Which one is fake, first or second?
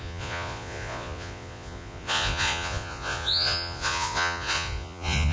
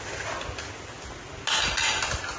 first